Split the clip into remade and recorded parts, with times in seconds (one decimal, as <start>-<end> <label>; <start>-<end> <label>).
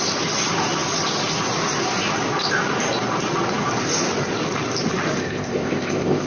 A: 0.0-5.2 recorded; 5.2-6.3 remade